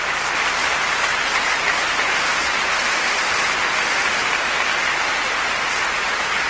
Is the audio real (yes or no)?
yes